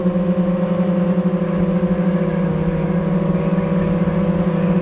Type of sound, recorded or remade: recorded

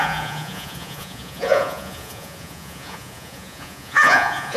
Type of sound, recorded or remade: remade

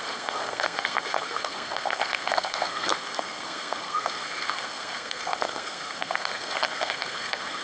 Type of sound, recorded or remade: remade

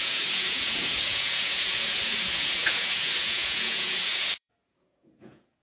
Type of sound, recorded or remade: remade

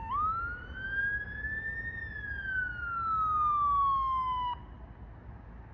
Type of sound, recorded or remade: recorded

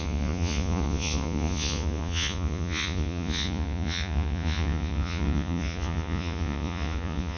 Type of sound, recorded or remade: remade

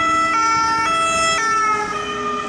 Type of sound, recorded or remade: recorded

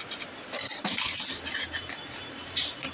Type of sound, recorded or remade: remade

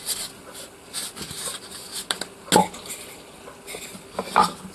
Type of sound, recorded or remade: recorded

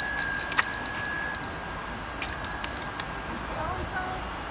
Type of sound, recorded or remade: recorded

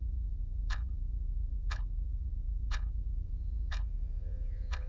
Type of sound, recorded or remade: remade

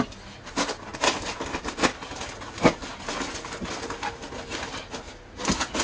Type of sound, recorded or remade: recorded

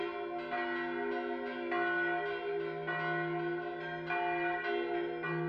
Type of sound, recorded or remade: recorded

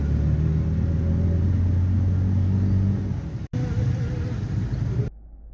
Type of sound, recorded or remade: recorded